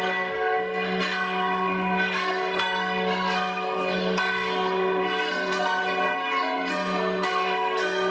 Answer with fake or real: fake